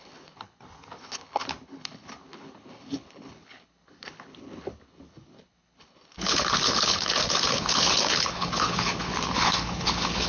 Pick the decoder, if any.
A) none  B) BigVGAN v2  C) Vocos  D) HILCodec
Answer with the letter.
D